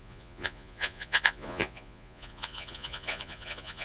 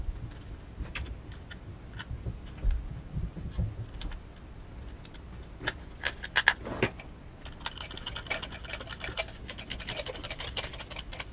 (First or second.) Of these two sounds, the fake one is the first